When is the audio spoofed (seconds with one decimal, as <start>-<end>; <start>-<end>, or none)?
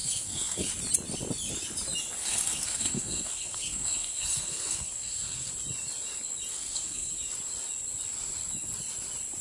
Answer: 0.0-0.7; 2.2-5.5; 6.5-7.1